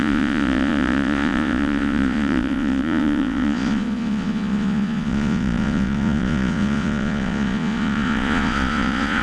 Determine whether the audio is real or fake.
fake